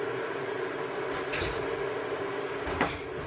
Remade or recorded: recorded